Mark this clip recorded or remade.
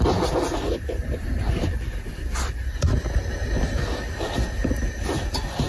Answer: remade